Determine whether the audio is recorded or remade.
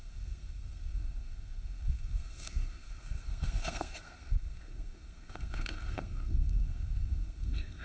remade